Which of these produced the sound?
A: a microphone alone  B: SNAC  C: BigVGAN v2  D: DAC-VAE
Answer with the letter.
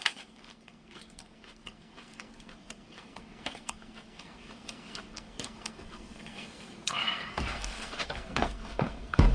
B